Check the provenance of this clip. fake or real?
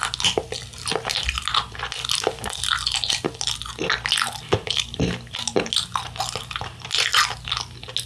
real